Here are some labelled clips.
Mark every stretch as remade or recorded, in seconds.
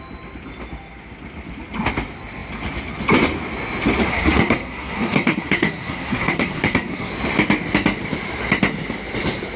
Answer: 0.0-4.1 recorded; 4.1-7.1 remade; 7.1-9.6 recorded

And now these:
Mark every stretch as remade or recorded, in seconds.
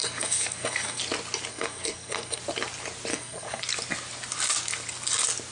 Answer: 0.0-1.0 remade; 1.0-1.5 recorded; 1.5-2.4 remade; 2.4-3.1 recorded; 3.1-3.6 remade; 3.6-5.5 recorded